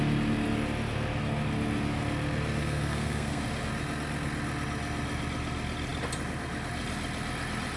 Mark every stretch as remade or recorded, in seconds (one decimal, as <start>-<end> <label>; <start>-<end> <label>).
0.0-2.6 recorded; 2.6-3.4 remade; 3.4-7.8 recorded